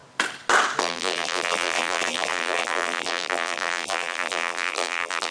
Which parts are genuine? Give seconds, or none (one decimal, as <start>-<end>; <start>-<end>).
0.0-0.8

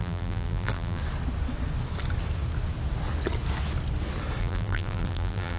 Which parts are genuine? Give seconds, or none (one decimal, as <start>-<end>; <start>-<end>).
1.0-4.4

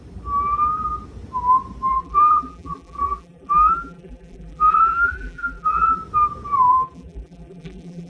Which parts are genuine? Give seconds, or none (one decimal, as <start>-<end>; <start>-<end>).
0.0-1.9; 6.0-6.7